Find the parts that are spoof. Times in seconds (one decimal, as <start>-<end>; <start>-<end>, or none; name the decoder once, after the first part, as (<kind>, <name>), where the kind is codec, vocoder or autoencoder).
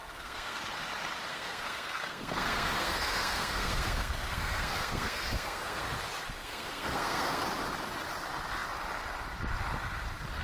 0.0-0.6 (codec, SNAC); 1.3-5.9; 6.4-7.4